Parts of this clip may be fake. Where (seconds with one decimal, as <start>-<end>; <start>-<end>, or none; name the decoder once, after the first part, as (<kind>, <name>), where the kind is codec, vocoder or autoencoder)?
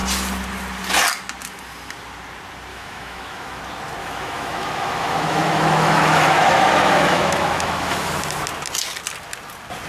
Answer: 2.7-3.6 (autoencoder, DAC-VAE); 4.0-8.2